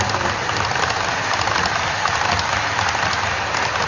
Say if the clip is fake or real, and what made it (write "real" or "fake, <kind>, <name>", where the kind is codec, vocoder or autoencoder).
real